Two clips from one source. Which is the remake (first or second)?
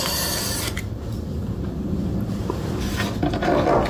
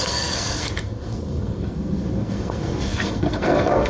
second